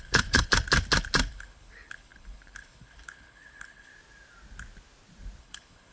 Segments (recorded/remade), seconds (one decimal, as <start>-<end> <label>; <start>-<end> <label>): 0.0-0.5 remade; 0.5-1.3 recorded; 1.3-3.9 remade; 3.9-5.4 recorded; 5.4-5.9 remade